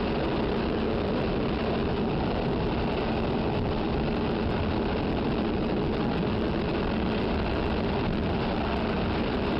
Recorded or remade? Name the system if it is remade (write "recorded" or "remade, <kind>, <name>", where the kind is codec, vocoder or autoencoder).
recorded